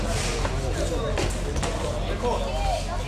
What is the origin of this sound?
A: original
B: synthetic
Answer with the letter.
A